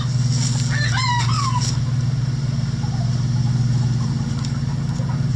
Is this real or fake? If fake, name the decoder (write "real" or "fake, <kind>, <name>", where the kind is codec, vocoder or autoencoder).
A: real